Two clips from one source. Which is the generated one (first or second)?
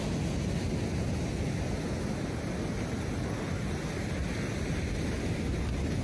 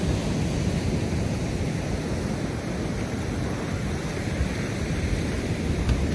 second